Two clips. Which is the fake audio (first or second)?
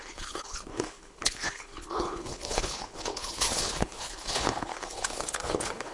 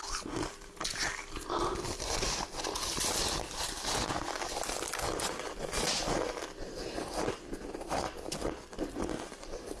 first